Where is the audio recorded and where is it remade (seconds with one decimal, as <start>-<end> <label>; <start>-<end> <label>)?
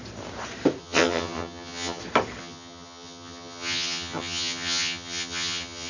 0.0-0.8 recorded; 0.8-2.0 remade; 2.0-2.4 recorded; 2.4-5.9 remade